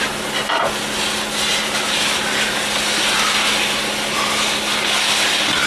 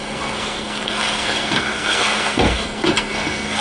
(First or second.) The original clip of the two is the first